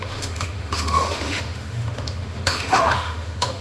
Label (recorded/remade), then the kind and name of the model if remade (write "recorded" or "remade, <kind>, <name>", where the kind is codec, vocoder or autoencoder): remade, autoencoder, DAC-VAE